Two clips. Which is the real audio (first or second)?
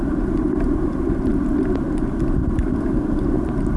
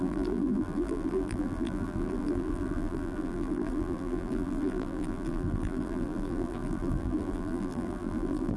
first